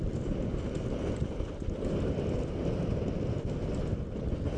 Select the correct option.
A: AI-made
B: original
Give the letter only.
B